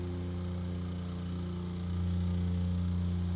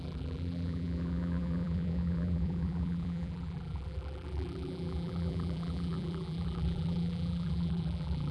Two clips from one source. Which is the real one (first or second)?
first